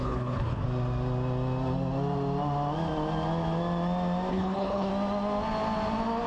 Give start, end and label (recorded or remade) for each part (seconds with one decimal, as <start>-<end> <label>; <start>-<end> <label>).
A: 0.0-0.6 remade; 0.6-4.3 recorded; 4.3-4.9 remade; 4.9-6.3 recorded